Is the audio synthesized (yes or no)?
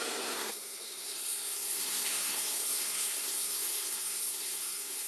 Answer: yes